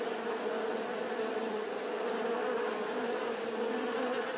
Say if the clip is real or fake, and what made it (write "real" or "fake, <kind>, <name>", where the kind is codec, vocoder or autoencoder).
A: real